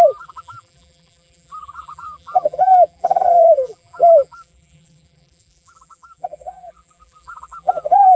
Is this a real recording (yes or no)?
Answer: no